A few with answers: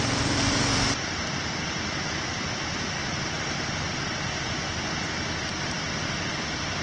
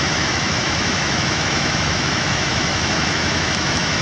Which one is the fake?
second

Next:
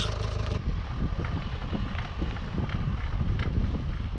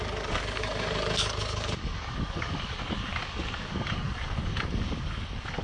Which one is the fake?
second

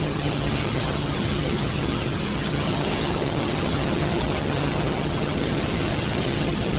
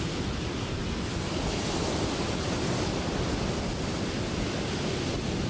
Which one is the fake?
first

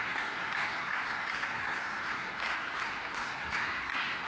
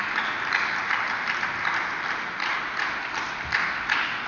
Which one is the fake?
first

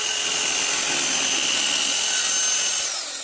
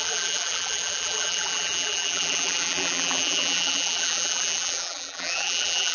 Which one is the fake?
second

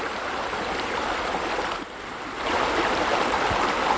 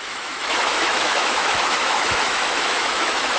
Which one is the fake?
second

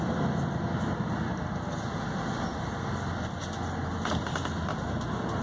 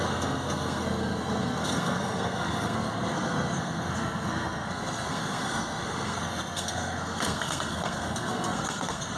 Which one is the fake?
second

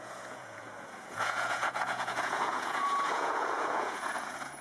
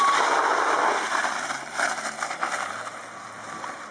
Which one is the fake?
first